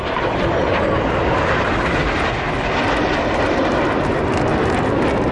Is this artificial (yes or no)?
no